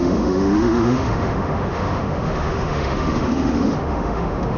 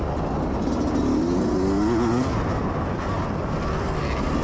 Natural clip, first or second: second